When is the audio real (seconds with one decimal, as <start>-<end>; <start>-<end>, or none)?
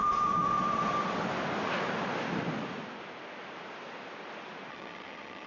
0.0-4.7